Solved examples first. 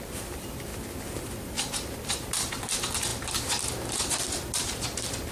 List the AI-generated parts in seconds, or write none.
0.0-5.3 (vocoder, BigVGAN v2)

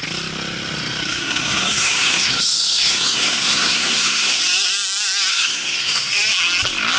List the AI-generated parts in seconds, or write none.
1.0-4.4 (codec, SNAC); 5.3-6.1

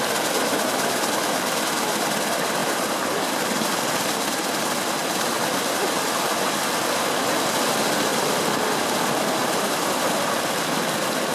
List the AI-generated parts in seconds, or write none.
2.6-6.7 (vocoder, BigVGAN v2); 8.1-8.7; 9.4-11.3

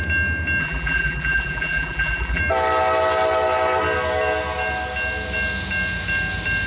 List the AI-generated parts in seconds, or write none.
0.6-2.4 (vocoder, BigVGAN v2)

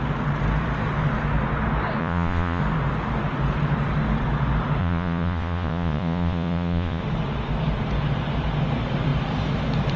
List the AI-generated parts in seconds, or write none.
2.0-2.6 (vocoder, Vocos); 4.8-7.0

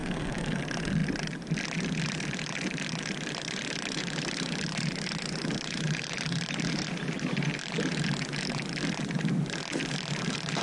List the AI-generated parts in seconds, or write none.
0.0-0.6 (codec, SNAC)